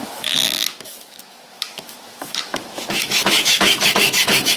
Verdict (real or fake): fake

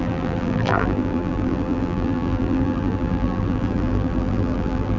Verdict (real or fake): fake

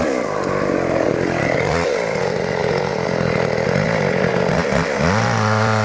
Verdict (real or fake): real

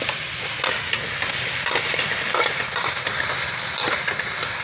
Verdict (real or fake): real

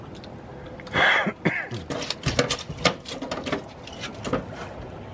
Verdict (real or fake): real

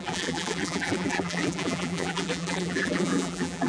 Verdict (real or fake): fake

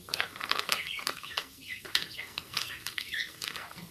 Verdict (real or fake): fake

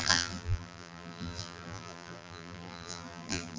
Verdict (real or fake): fake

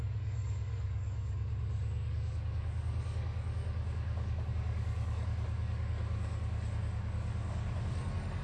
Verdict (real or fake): fake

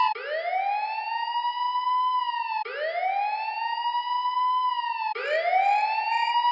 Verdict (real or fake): real